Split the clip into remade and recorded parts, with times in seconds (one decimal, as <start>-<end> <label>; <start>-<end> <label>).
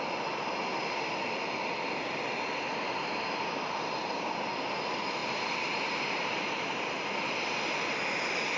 0.0-8.6 recorded